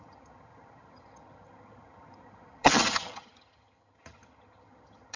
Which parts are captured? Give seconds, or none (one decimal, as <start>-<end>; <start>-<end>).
none